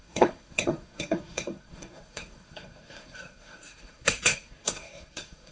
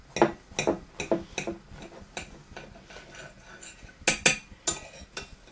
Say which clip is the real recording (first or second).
second